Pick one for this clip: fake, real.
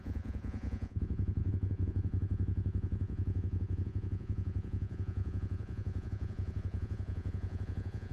fake